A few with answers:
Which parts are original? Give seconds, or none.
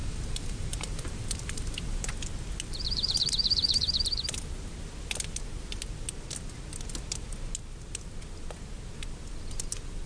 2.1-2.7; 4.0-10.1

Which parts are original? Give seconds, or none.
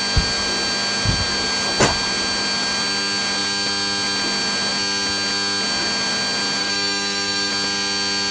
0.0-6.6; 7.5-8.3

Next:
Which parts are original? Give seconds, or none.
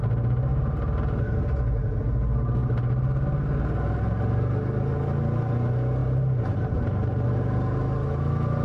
0.0-6.0; 6.8-8.6